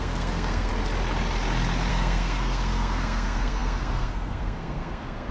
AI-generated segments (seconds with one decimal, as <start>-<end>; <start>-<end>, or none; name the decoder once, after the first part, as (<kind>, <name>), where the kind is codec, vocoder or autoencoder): 0.0-0.7 (codec, SNAC); 1.9-5.3